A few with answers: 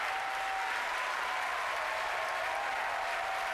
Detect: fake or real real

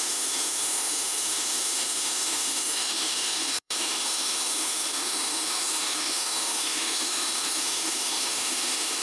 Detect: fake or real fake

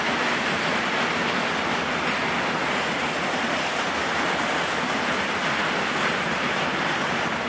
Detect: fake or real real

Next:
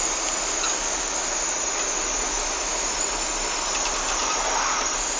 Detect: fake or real real